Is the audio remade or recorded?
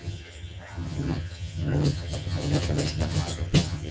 remade